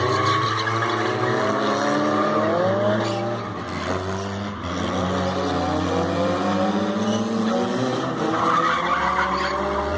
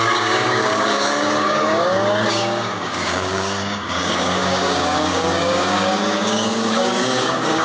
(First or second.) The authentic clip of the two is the first